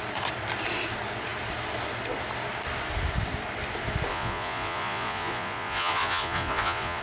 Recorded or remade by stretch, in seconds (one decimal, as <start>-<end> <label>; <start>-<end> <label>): 0.0-4.1 recorded; 4.1-7.0 remade